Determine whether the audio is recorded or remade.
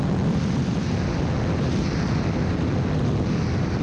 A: recorded